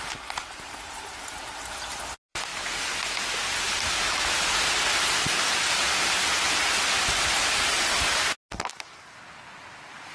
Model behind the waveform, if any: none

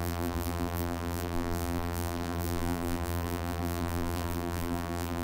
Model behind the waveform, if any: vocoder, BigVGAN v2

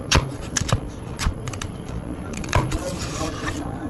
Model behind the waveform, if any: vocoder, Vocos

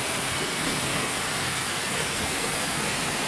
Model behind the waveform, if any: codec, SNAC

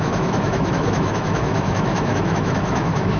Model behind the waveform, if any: autoencoder, DAC-VAE